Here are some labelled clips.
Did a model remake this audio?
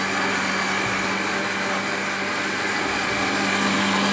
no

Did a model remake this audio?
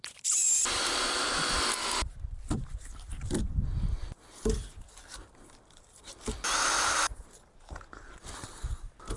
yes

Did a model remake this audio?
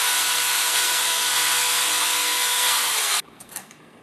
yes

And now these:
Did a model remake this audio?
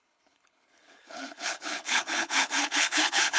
yes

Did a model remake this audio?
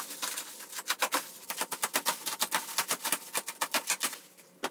no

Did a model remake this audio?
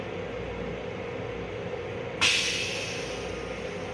no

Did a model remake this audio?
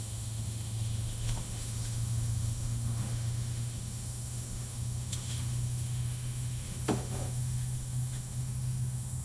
yes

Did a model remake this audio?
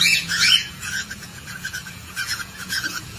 yes